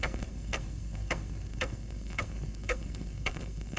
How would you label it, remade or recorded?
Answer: remade